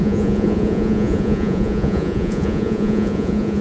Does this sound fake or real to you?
fake